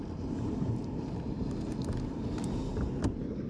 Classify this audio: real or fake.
real